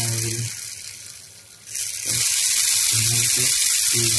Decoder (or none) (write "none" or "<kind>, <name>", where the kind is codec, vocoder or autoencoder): none